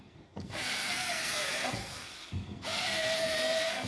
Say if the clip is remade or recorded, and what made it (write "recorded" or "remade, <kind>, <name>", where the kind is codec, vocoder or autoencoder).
remade, codec, SNAC